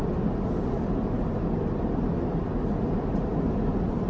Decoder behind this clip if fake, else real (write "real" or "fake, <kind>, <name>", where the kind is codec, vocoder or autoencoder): real